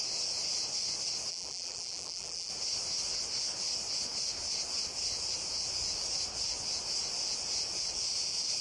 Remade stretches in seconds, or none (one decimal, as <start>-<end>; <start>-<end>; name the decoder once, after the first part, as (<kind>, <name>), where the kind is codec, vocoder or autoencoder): 1.3-2.5 (vocoder, BigVGAN v2)